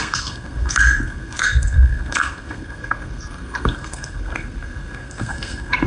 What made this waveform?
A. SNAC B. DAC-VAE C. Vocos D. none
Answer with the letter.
A